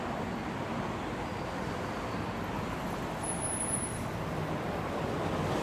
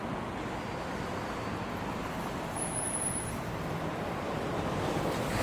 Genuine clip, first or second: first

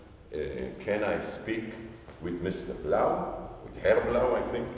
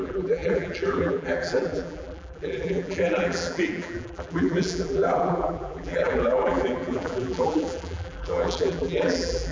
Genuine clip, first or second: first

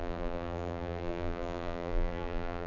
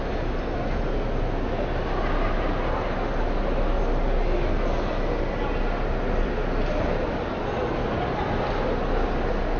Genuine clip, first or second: second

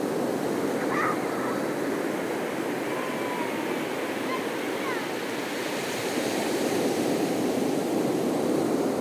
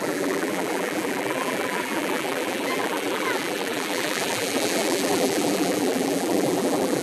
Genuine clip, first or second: first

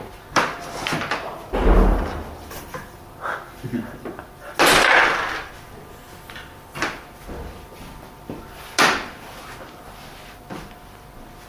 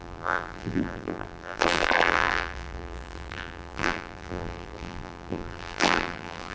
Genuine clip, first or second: first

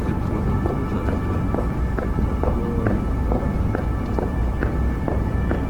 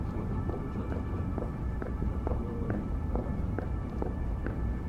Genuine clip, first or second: first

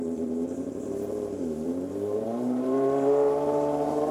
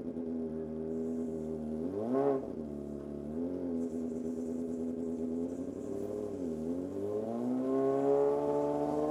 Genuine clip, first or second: second